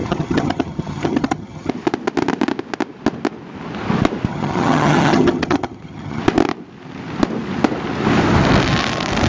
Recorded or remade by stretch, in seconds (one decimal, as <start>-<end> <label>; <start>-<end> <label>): 0.0-1.7 remade; 1.7-4.3 recorded; 4.3-6.2 remade; 6.2-9.3 recorded